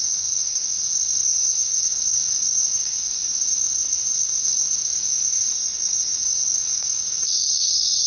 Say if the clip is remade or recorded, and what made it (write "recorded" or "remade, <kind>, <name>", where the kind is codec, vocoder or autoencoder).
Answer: remade, codec, SNAC